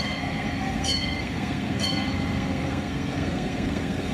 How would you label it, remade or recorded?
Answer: remade